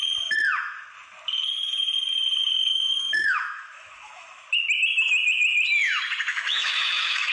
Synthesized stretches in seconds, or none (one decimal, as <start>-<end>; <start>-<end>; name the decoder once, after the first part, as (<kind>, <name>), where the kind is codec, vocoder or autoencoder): 2.7-4.6 (autoencoder, DAC-VAE); 6.3-7.3